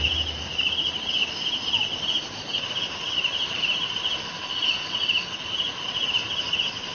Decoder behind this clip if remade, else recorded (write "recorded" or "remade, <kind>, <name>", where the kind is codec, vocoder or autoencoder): recorded